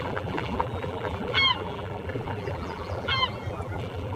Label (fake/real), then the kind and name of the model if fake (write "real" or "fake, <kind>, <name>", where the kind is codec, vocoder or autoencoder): fake, vocoder, BigVGAN v2